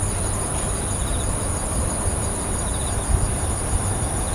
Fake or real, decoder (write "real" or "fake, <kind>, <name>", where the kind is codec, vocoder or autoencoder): fake, vocoder, BigVGAN v2